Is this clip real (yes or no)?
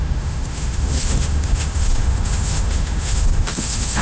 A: no